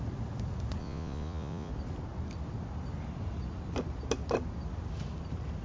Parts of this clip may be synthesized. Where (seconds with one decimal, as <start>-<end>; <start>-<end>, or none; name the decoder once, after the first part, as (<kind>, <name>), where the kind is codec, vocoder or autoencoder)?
0.8-1.7 (vocoder, Vocos)